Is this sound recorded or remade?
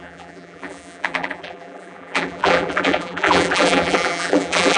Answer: remade